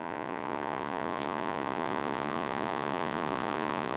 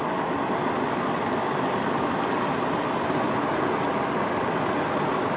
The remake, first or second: first